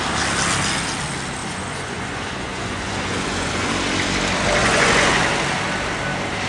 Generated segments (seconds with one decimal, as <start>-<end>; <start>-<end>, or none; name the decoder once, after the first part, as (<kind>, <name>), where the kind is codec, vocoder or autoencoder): 1.4-3.7 (vocoder, Vocos); 4.6-5.3